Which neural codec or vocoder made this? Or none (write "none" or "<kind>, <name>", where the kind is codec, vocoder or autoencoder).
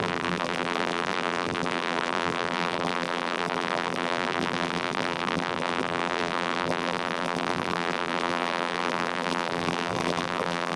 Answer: vocoder, BigVGAN v2